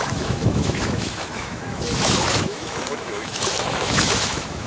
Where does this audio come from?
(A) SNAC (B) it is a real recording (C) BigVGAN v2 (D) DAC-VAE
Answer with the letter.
D